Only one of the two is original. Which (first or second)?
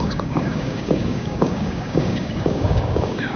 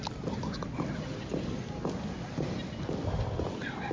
second